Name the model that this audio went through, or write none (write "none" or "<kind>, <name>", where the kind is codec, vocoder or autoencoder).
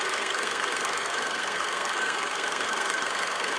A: codec, SNAC